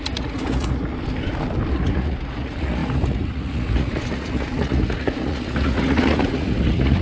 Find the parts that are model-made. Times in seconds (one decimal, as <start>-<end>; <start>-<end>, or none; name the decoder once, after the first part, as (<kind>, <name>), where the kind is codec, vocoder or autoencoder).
0.0-0.9 (vocoder, Vocos); 1.7-7.0